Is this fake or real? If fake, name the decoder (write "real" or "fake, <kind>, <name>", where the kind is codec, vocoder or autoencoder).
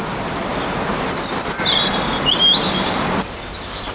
fake, vocoder, BigVGAN v2